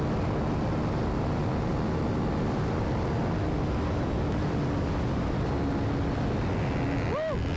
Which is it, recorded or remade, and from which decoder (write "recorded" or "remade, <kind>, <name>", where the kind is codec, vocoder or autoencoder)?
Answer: recorded